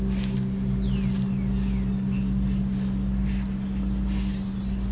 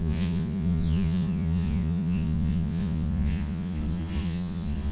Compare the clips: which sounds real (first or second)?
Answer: first